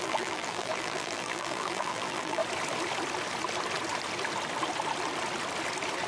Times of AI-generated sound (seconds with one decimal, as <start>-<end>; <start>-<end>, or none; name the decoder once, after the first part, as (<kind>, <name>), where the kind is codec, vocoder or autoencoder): 0.0-2.4 (vocoder, BigVGAN v2)